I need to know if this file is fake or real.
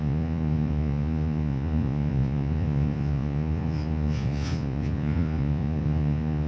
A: fake